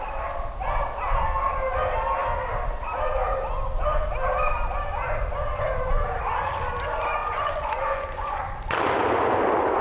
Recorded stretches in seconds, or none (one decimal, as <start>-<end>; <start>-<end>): 0.0-7.2; 8.4-9.8